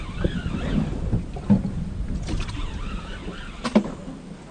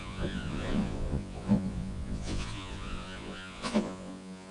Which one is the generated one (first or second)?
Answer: second